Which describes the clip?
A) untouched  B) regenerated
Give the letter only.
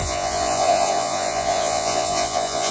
B